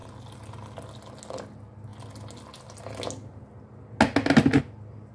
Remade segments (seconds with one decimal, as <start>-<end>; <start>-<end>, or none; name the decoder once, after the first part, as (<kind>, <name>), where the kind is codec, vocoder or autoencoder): none